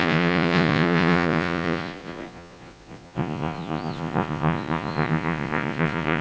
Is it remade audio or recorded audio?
remade